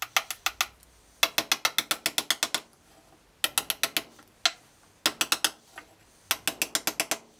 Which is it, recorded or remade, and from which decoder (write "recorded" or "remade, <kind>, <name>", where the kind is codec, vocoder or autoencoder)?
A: recorded